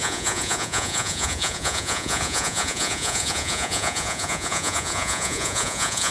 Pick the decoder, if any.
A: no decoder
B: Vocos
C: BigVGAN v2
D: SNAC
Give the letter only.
B